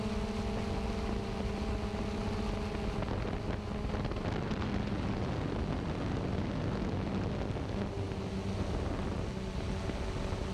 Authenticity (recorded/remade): recorded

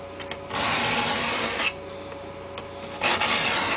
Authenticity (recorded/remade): recorded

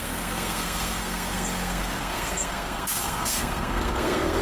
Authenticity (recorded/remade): remade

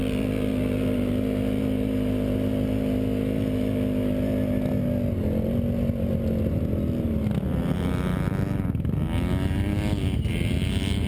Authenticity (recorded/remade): recorded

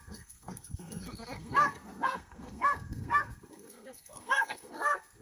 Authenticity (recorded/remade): remade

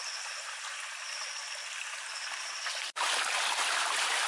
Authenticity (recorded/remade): recorded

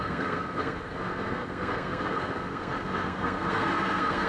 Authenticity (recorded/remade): remade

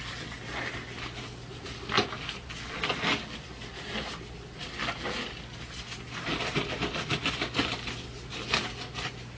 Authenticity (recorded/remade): recorded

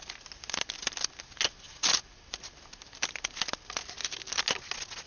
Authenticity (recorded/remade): recorded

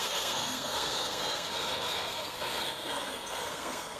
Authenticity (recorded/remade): remade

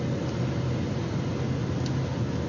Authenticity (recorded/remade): recorded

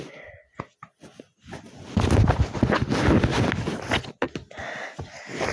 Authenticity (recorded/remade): recorded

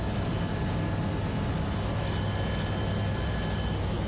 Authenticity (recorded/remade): recorded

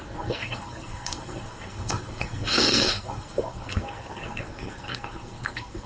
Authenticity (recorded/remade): remade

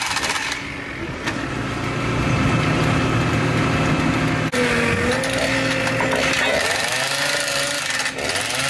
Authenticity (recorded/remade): recorded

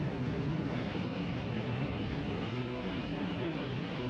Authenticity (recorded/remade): remade